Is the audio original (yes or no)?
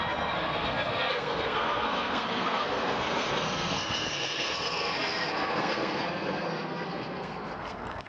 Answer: no